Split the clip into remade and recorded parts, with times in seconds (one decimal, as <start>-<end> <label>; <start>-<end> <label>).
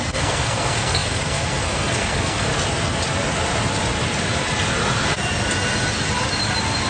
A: 0.0-2.5 remade; 2.5-6.9 recorded